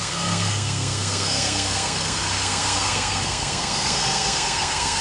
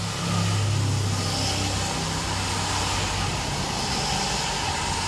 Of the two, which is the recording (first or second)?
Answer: second